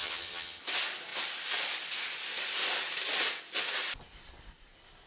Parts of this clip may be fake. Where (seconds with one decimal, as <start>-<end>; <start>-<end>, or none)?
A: 0.0-0.6

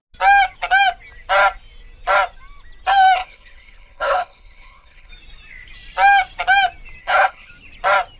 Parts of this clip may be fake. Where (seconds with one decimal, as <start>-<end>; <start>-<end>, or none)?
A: 3.2-5.1; 7.0-7.5